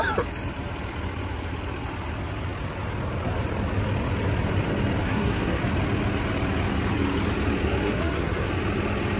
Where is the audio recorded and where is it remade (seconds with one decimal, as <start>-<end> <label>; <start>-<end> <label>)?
0.0-5.0 recorded; 5.0-5.6 remade; 5.6-7.8 recorded; 7.8-8.5 remade; 8.5-9.2 recorded